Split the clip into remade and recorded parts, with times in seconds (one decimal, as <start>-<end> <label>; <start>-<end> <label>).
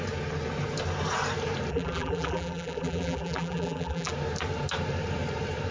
0.0-1.7 recorded; 1.7-4.1 remade; 4.1-5.7 recorded